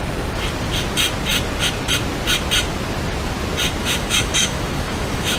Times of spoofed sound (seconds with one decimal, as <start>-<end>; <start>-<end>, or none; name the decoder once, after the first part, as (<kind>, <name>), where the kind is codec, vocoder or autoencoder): 3.8-5.4 (autoencoder, DAC-VAE)